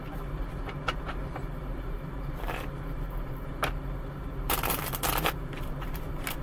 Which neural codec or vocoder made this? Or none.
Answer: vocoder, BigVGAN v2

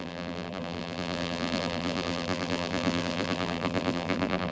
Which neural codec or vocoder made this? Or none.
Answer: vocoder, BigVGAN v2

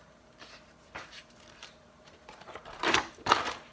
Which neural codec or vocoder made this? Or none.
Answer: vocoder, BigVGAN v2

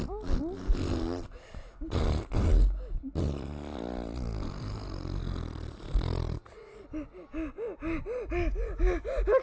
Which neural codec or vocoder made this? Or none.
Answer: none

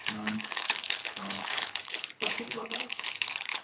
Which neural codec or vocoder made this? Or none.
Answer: codec, HILCodec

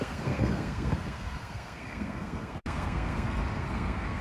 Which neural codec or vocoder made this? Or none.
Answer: codec, SNAC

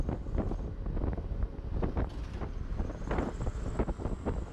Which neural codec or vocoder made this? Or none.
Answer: none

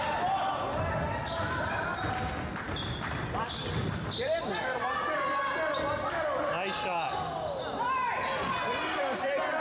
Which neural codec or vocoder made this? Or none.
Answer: none